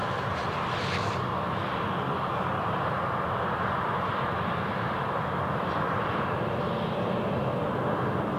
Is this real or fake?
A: real